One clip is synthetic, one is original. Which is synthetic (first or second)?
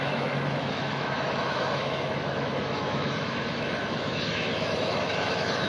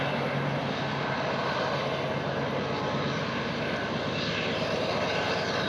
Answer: first